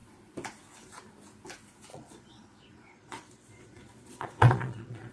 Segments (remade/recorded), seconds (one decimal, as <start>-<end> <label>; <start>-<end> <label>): 0.0-1.9 recorded; 1.9-5.1 remade